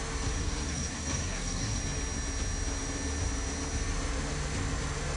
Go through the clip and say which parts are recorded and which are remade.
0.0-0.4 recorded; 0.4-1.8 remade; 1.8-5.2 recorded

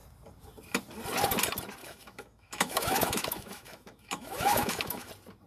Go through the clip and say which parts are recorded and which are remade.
0.0-1.8 recorded; 1.8-5.1 remade; 5.1-5.5 recorded

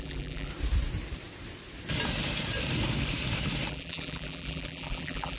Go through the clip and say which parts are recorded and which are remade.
0.0-0.5 remade; 0.5-3.7 recorded; 3.7-5.4 remade

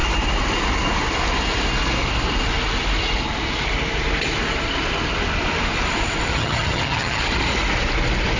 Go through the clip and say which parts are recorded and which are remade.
0.0-6.3 recorded; 6.3-7.2 remade; 7.2-8.4 recorded

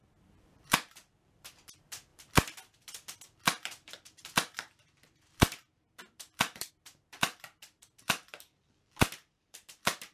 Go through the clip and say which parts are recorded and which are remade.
0.0-10.1 remade

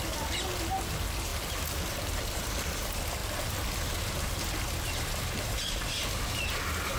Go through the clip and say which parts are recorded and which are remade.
0.0-7.0 recorded

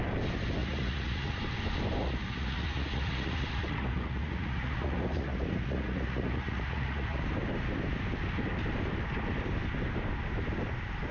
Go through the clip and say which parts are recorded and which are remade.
0.0-0.6 recorded; 0.6-1.4 remade; 1.4-2.0 recorded; 2.0-7.2 remade; 7.2-11.1 recorded